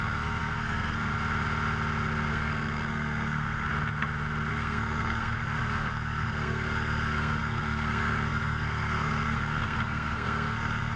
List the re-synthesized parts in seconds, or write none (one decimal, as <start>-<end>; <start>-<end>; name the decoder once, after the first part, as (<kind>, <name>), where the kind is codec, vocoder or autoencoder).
0.0-1.1 (codec, SNAC); 2.3-3.7; 4.5-11.0